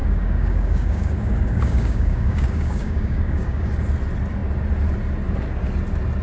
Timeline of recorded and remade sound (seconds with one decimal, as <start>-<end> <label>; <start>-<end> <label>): 0.0-3.7 remade; 3.7-6.2 recorded